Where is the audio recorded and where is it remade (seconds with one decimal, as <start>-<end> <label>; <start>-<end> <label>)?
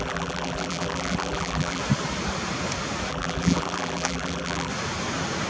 0.0-1.8 remade; 1.8-3.1 recorded; 3.1-4.7 remade; 4.7-5.5 recorded